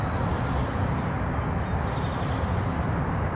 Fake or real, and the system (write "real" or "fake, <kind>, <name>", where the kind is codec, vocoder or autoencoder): real